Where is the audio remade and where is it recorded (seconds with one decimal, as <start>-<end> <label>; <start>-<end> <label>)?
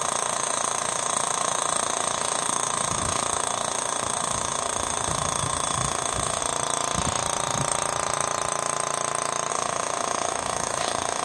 0.0-6.4 remade; 6.4-9.5 recorded; 9.5-11.2 remade